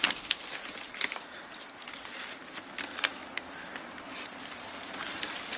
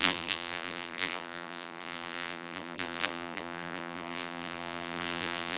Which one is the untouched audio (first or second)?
first